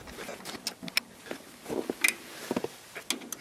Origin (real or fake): real